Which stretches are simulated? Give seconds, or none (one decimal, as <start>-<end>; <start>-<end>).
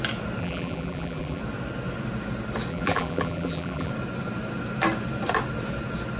0.4-1.4; 2.7-3.9